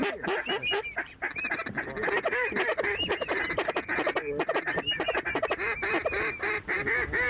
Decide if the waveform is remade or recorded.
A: recorded